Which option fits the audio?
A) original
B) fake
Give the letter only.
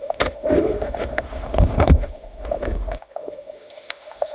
B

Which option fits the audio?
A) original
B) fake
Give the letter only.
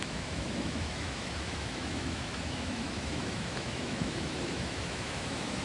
B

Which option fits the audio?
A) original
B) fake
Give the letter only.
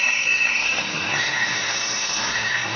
B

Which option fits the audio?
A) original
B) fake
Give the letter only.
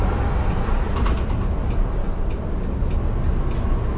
A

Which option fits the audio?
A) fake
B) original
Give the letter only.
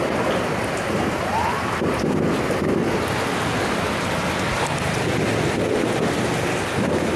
B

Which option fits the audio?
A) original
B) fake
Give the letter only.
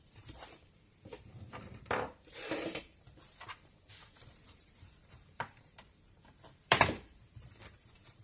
B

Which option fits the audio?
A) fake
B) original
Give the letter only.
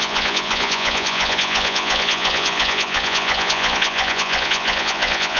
A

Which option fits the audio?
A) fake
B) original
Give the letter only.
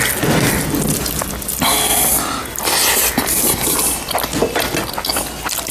B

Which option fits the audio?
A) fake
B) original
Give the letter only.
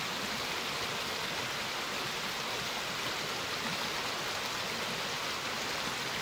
B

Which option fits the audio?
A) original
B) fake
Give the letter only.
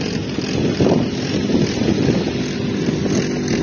A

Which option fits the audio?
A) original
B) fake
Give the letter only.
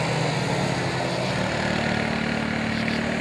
A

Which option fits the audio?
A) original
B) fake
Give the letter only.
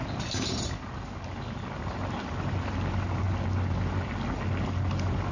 A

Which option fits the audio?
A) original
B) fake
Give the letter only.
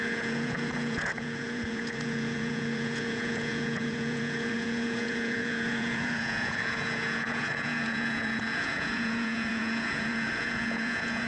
B